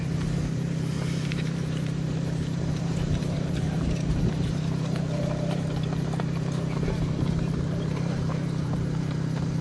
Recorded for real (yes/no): no